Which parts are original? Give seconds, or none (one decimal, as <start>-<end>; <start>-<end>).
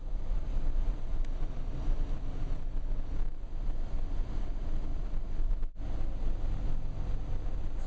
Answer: 0.0-7.9